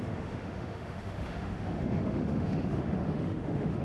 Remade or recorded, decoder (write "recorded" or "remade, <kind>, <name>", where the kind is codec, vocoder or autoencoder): remade, autoencoder, DAC-VAE